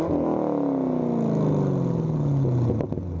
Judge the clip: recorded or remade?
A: recorded